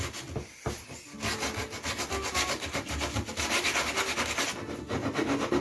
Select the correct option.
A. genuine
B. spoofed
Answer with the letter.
A